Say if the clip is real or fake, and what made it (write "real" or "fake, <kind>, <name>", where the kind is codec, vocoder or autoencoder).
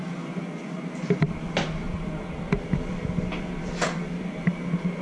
real